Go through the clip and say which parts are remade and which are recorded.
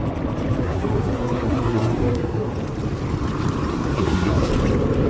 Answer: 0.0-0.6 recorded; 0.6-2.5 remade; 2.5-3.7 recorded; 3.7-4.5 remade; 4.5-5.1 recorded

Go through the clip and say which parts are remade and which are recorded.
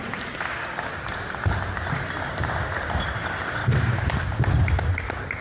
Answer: 0.0-5.4 recorded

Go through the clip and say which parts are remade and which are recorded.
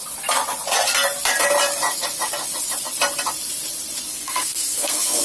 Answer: 0.0-4.1 recorded; 4.1-5.2 remade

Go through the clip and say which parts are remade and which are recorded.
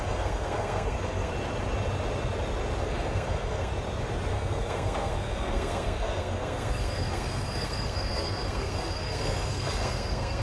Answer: 0.0-1.3 remade; 1.3-2.8 recorded; 2.8-3.7 remade; 3.7-4.3 recorded; 4.3-10.4 remade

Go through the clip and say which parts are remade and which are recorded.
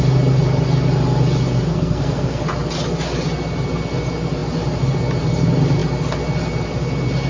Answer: 0.0-1.7 recorded; 1.7-2.4 remade; 2.4-7.3 recorded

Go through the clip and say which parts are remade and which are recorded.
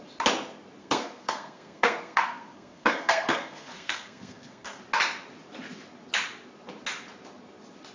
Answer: 0.0-0.8 recorded; 0.8-4.8 remade; 4.8-7.9 recorded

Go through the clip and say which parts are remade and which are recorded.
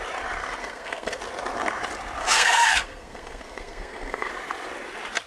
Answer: 0.0-0.6 recorded; 0.6-1.2 remade; 1.2-2.2 recorded; 2.2-4.3 remade; 4.3-5.3 recorded